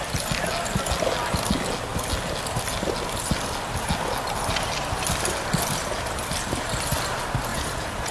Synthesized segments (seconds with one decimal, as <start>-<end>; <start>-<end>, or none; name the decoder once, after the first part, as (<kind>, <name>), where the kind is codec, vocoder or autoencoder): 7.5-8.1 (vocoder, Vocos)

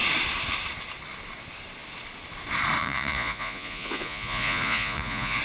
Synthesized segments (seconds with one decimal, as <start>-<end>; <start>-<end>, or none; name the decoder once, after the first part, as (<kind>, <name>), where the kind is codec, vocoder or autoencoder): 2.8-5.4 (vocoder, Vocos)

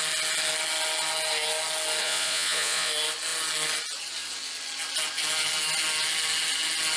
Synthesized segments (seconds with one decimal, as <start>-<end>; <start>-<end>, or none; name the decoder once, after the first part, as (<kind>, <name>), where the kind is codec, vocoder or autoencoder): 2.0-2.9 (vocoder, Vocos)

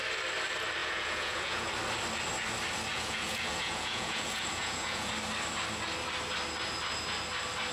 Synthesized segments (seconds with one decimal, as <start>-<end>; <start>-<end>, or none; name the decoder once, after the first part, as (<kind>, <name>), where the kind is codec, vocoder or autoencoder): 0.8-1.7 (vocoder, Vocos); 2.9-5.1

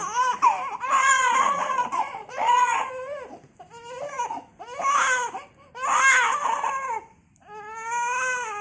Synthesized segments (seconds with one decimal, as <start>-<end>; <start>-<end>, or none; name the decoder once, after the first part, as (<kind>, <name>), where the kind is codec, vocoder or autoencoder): 1.0-2.9 (vocoder, Vocos)

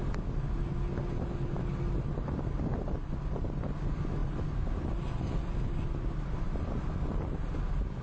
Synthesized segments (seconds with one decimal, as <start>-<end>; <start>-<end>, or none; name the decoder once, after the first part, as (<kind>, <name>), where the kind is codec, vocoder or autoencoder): none